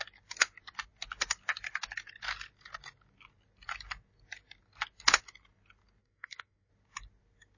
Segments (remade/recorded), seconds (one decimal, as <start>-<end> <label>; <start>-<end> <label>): 0.0-6.0 recorded; 6.0-6.7 remade; 6.7-7.6 recorded